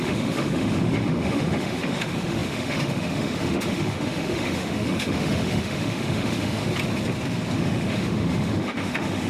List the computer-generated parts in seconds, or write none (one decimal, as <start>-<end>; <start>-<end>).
0.0-6.6; 7.6-9.3